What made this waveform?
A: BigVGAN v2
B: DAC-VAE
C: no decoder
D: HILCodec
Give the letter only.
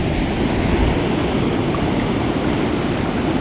C